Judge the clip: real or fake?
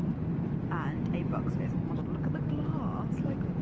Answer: real